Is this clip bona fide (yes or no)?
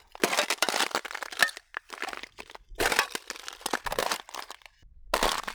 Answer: yes